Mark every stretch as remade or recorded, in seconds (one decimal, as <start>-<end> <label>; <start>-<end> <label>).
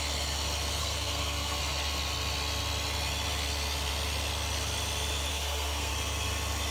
0.0-0.8 recorded; 0.8-1.6 remade; 1.6-5.3 recorded; 5.3-5.9 remade; 5.9-6.7 recorded